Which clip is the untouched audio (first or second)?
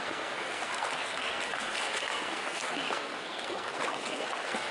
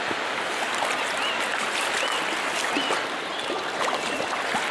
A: second